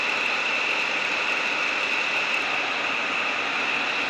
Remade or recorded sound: recorded